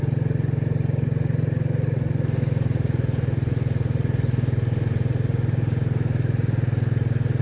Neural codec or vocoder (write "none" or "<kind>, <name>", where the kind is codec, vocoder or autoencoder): none